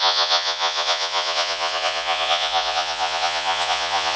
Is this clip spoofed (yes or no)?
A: yes